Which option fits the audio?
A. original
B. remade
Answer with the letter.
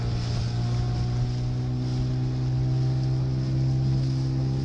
A